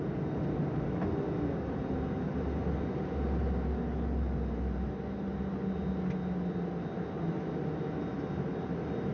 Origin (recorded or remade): recorded